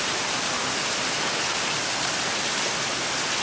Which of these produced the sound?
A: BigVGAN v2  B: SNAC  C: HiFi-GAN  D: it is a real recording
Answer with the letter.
D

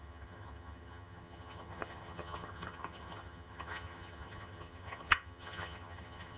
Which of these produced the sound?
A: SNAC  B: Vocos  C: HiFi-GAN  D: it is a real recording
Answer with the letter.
C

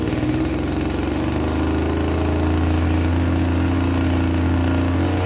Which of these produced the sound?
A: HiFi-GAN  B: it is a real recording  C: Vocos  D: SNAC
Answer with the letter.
B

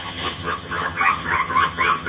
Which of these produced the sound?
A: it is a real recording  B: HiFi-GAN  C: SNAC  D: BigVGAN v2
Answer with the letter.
B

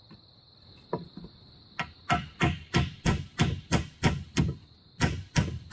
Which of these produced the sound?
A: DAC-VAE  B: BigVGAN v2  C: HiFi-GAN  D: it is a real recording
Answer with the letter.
D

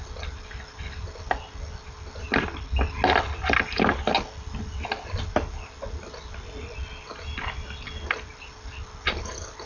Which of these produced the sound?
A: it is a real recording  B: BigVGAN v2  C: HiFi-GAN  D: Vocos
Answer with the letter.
A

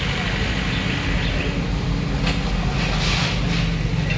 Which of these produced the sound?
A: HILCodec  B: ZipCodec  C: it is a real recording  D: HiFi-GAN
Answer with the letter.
C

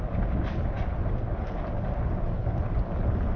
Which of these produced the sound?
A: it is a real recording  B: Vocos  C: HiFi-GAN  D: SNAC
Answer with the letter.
A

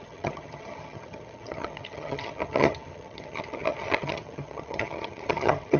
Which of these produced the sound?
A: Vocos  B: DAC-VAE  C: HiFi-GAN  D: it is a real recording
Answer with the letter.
C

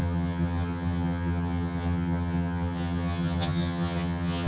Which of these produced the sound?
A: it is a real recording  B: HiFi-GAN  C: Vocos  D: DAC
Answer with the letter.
B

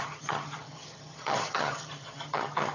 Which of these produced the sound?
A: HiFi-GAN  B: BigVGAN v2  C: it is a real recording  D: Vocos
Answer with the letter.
A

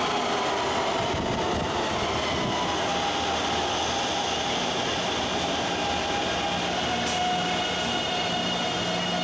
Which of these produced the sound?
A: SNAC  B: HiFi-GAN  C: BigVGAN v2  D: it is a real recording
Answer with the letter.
D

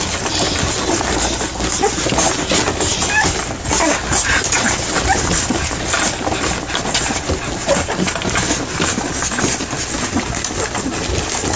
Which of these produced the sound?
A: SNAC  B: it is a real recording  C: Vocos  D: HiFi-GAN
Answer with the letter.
B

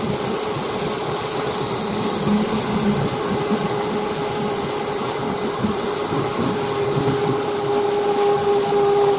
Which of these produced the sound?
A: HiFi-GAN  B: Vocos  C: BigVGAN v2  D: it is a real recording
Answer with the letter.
D